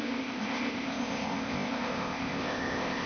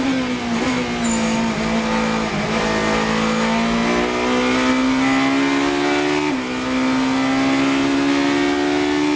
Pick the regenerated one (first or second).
first